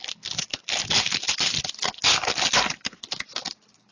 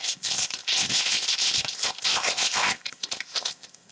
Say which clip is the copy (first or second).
second